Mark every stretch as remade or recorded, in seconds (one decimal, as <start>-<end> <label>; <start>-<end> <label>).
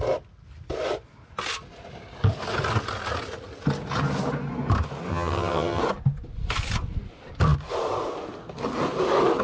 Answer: 0.0-5.1 recorded; 5.1-5.8 remade; 5.8-9.4 recorded